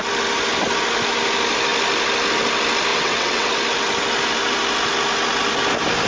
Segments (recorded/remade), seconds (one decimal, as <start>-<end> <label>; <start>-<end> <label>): 0.0-2.9 recorded; 2.9-3.5 remade; 3.5-6.1 recorded